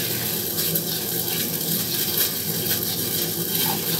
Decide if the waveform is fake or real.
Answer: real